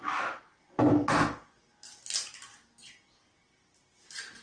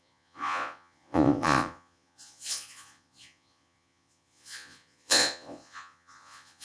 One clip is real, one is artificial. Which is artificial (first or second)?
second